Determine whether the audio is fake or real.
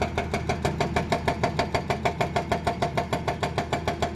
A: real